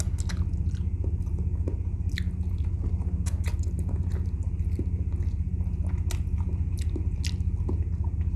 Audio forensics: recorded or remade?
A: recorded